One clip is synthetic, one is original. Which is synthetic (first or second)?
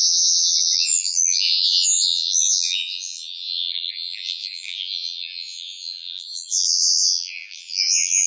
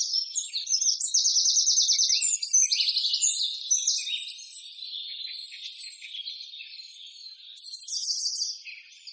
first